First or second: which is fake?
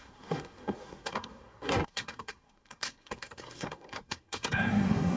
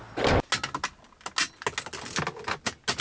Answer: first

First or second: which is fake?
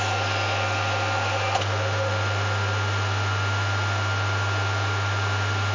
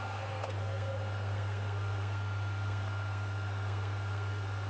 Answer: second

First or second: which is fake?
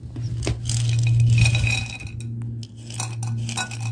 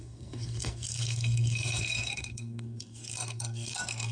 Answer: second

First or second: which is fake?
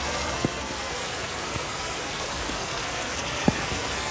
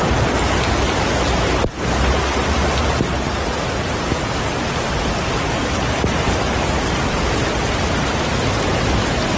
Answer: first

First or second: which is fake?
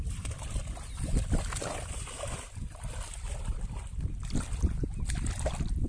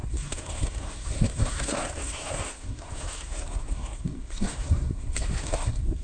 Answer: second